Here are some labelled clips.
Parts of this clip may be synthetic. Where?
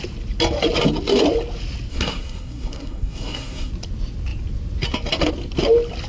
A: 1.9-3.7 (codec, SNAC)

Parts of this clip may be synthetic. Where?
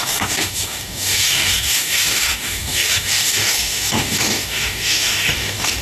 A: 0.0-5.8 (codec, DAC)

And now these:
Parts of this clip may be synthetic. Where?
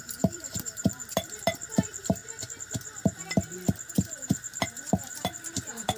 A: 0.0-2.2 (vocoder, BigVGAN v2); 3.9-6.0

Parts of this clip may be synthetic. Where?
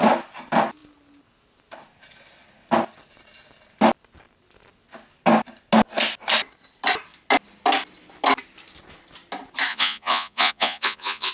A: 9.7-11.3 (vocoder, Vocos)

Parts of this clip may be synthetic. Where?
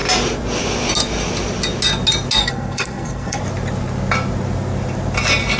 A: 2.4-3.4 (codec, SNAC)